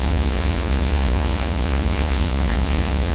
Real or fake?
fake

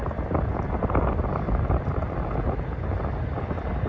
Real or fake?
real